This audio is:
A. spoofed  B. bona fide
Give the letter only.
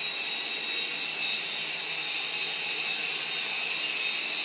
B